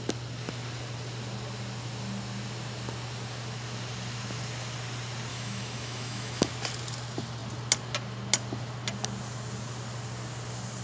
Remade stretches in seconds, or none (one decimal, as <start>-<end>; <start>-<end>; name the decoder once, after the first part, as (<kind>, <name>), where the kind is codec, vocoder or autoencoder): 5.3-6.5 (autoencoder, DAC-VAE)